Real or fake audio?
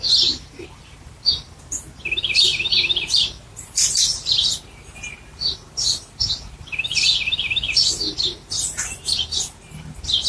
real